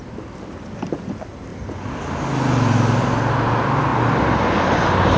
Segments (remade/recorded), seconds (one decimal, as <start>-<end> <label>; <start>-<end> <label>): 0.0-5.2 recorded